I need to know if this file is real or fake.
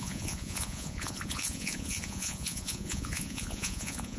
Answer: fake